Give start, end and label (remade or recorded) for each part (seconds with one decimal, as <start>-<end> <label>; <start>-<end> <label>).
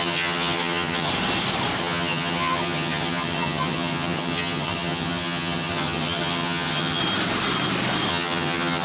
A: 0.0-1.1 remade; 1.1-1.8 recorded; 1.8-7.0 remade; 7.0-8.1 recorded; 8.1-8.8 remade